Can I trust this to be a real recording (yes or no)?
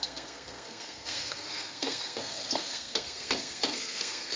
no